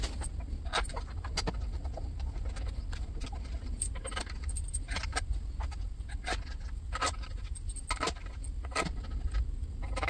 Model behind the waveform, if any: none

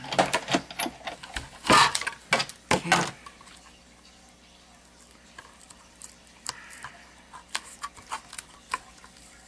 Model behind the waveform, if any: none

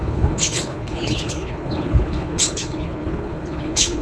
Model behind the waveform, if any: codec, HILCodec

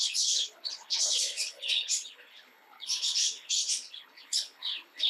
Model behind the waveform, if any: codec, HILCodec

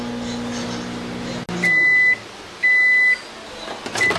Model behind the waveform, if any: none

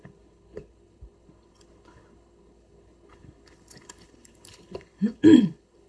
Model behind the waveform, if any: codec, HILCodec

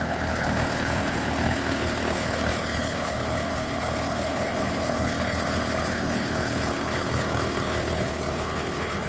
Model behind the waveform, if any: codec, HILCodec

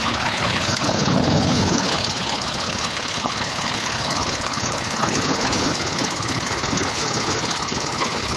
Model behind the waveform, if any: codec, HILCodec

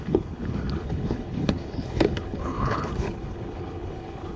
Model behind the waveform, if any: codec, HILCodec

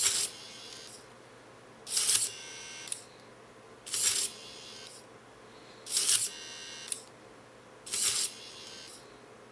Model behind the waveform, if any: none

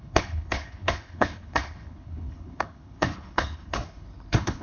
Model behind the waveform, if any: codec, HILCodec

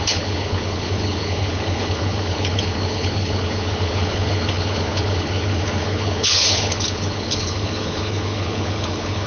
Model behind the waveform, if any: codec, HILCodec